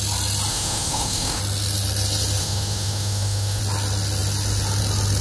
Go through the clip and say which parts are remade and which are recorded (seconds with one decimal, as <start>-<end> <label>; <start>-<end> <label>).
0.0-0.5 recorded; 0.5-1.4 remade; 1.4-2.4 recorded; 2.4-3.6 remade; 3.6-5.2 recorded